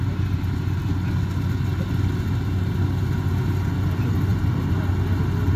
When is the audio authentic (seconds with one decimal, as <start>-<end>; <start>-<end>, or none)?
0.0-5.6